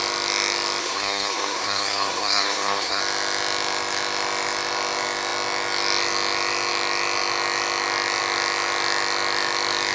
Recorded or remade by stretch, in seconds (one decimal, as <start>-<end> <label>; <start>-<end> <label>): 0.0-0.8 recorded; 0.8-3.0 remade; 3.0-9.9 recorded